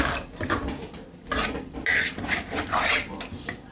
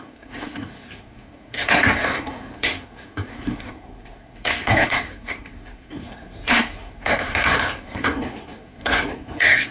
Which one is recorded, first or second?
first